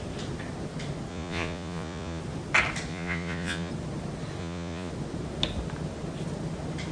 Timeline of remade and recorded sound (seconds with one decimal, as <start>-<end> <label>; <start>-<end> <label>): 0.0-1.1 recorded; 1.1-2.2 remade; 2.2-2.9 recorded; 2.9-3.7 remade; 3.7-4.4 recorded; 4.4-4.9 remade; 4.9-6.9 recorded